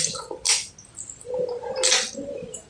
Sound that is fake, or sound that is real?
real